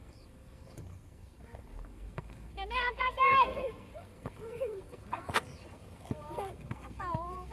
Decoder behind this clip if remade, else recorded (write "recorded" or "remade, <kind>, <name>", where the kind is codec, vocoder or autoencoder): remade, codec, SNAC